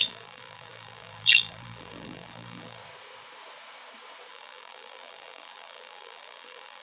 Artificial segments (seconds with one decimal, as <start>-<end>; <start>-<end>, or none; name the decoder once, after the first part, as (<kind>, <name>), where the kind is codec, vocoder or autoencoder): 0.0-2.8 (vocoder, BigVGAN v2); 4.3-6.8